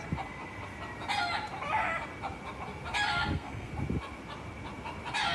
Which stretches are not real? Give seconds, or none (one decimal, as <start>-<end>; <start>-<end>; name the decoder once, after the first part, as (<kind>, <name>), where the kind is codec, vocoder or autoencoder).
3.1-3.7 (codec, SNAC)